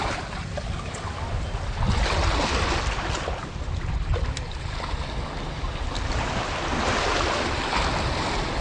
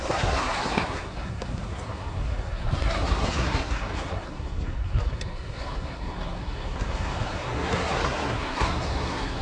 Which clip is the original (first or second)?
first